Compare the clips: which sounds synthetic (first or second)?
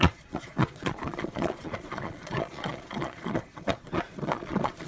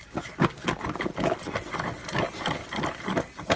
first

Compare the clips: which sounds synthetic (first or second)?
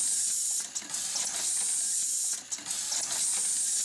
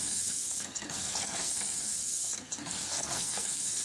second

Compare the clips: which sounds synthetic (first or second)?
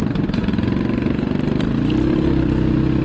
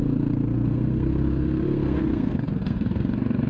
second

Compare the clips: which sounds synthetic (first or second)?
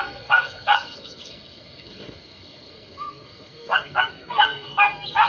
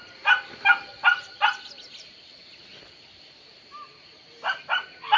first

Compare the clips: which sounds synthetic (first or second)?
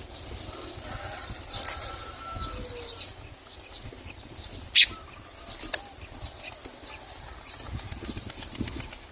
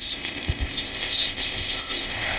second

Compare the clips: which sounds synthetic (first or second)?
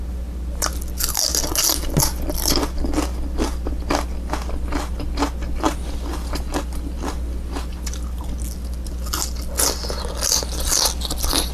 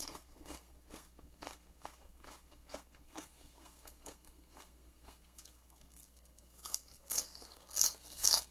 second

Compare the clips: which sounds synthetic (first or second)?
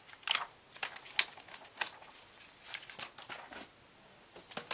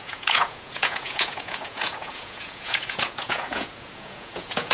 second